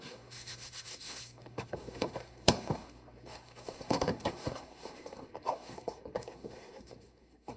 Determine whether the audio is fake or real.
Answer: fake